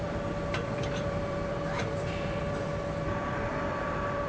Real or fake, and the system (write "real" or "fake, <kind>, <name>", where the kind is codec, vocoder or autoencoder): fake, vocoder, BigVGAN v2